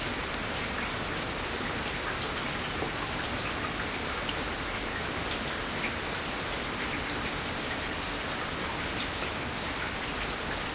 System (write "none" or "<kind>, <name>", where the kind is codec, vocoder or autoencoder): none